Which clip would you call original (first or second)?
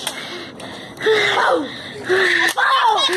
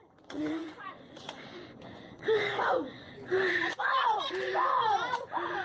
first